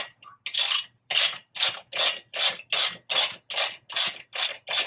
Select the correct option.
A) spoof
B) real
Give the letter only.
B